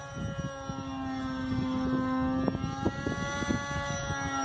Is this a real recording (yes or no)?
yes